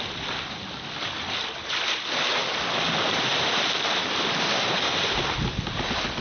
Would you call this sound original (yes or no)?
yes